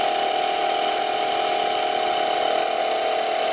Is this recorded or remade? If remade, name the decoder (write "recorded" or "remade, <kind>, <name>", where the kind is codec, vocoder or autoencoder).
recorded